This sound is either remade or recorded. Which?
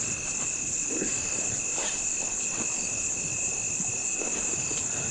recorded